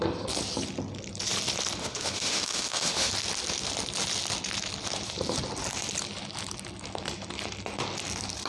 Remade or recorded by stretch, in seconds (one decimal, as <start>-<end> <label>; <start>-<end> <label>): 0.0-1.8 recorded; 1.8-3.1 remade; 3.1-8.5 recorded